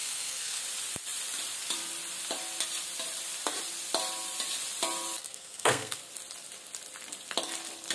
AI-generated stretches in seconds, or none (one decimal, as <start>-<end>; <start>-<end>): 0.0-0.6; 5.2-6.0

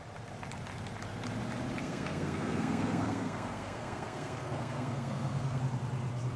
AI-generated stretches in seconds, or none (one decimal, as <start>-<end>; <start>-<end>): 1.8-5.6

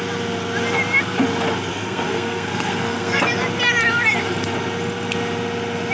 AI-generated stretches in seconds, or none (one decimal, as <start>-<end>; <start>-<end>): 1.7-3.2

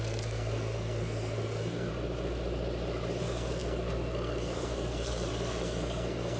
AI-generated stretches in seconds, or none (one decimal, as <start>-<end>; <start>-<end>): 0.0-1.9; 3.2-6.4

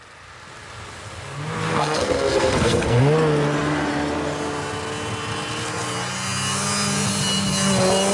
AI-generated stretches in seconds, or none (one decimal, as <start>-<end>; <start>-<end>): 1.7-3.0

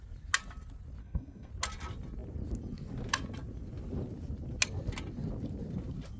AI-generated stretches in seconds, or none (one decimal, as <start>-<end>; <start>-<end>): 1.0-1.5

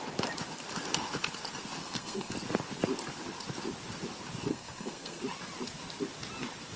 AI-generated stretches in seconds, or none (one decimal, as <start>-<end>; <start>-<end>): 1.8-2.3; 4.5-5.2

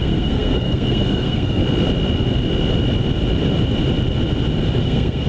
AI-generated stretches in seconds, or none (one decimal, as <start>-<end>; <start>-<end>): 0.0-1.6; 4.8-5.3